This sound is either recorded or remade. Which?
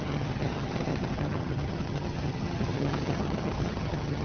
remade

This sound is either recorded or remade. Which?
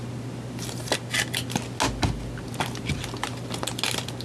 recorded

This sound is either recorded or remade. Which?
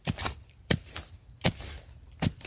remade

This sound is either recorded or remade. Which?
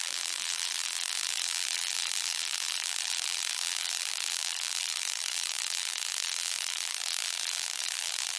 remade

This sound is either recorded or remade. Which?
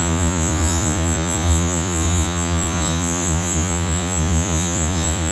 remade